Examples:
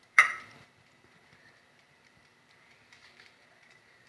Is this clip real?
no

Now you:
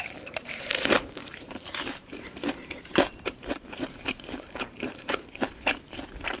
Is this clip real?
no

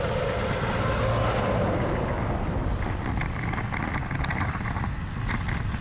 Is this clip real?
yes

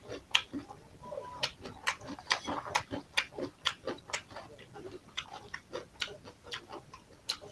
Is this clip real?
yes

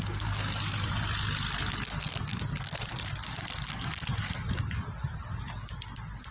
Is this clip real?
yes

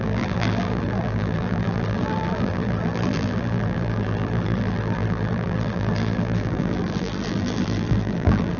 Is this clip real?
no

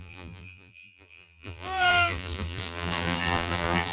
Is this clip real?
no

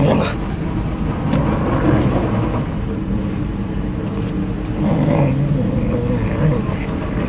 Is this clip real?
yes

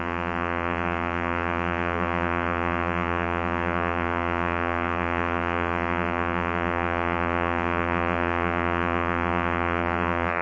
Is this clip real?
no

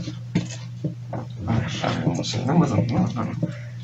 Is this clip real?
yes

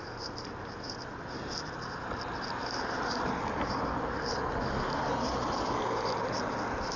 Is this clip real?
yes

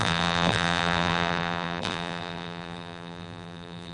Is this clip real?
no